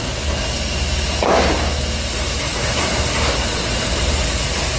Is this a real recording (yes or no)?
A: yes